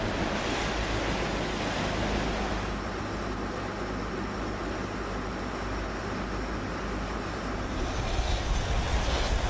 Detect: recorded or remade recorded